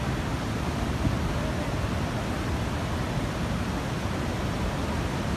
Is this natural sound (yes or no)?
yes